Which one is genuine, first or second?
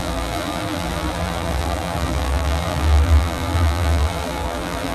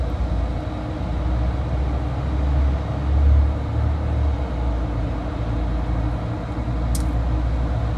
second